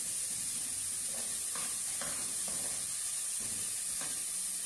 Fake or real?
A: real